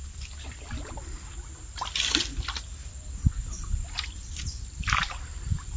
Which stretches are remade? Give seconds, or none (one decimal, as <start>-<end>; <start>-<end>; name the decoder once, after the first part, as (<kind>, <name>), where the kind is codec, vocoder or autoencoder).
none